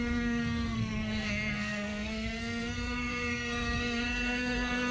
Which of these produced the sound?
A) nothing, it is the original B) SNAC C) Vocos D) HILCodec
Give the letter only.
B